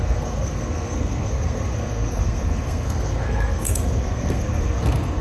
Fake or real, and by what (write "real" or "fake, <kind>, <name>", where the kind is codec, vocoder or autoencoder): fake, codec, SNAC